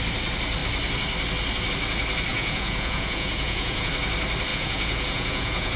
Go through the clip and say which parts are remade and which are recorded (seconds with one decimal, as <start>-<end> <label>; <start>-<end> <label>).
0.0-2.3 recorded; 2.3-3.9 remade; 3.9-4.5 recorded; 4.5-5.8 remade